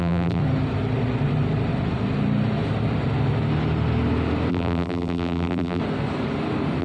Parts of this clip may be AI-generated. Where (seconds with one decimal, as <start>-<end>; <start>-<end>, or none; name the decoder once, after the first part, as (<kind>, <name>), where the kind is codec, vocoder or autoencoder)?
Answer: 0.0-0.4 (vocoder, BigVGAN v2); 4.5-5.8